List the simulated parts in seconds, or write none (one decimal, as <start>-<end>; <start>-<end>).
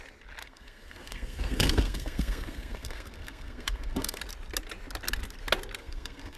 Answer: 0.4-4.2; 5.8-6.4